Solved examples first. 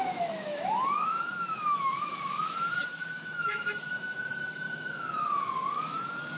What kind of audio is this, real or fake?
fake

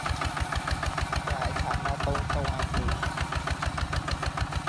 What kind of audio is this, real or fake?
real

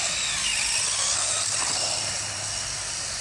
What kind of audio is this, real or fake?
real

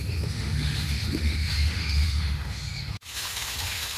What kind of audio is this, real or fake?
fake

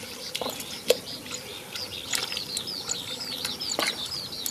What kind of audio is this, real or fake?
real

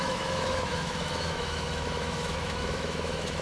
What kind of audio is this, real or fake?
fake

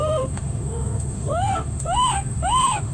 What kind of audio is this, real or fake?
fake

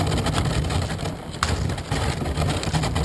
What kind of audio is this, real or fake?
real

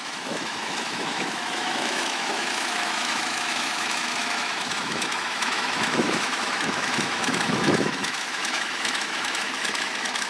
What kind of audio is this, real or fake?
fake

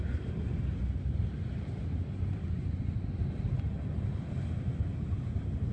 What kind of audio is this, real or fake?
real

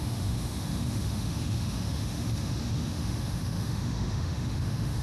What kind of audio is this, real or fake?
fake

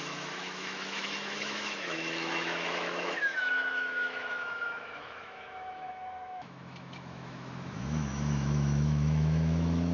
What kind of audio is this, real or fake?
fake